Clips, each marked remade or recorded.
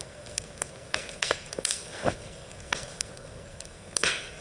remade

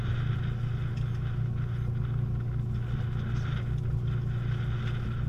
recorded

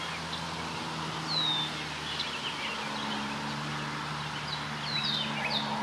recorded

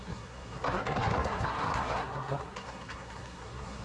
remade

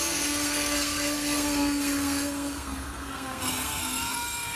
remade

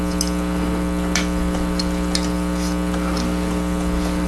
recorded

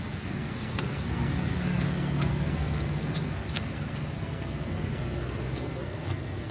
remade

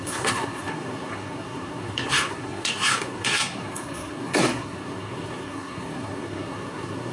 remade